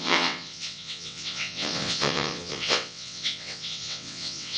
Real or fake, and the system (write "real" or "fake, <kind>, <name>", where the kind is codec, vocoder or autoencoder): fake, vocoder, WaveNeXt